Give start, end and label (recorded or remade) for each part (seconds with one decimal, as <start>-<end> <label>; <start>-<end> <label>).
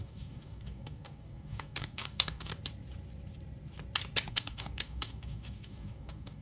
0.0-2.5 remade; 2.5-4.3 recorded; 4.3-6.4 remade